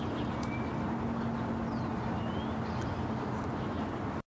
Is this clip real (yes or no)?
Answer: yes